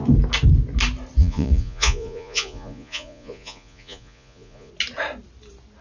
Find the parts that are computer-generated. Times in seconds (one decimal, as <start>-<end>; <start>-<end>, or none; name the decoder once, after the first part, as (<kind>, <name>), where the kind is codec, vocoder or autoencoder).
1.2-4.7 (vocoder, Vocos)